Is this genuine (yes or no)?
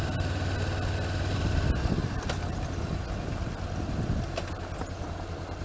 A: yes